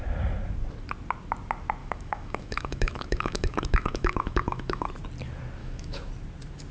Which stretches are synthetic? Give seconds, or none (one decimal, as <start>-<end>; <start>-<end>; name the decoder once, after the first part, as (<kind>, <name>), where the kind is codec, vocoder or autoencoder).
1.8-4.9 (autoencoder, DAC-VAE); 5.6-6.1